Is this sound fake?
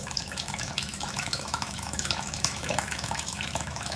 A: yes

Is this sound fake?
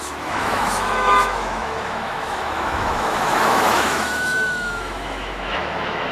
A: yes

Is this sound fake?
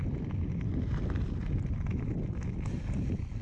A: no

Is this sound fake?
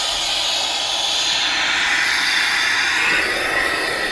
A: no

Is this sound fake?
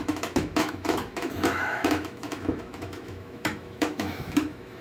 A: yes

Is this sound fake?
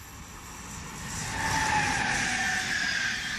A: no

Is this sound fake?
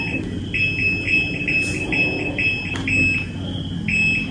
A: no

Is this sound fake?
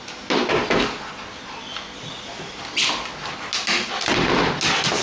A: no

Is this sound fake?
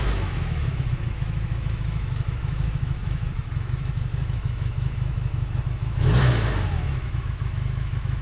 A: yes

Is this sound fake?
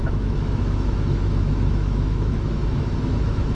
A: yes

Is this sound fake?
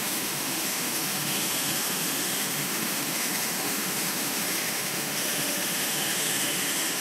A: yes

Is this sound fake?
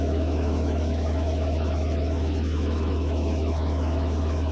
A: yes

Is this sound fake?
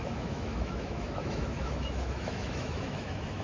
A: yes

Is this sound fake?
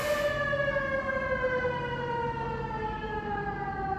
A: no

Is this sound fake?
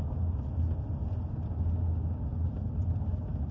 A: no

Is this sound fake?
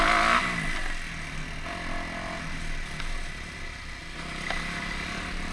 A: no